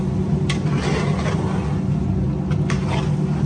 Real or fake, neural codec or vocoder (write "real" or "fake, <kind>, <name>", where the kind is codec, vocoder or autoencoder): real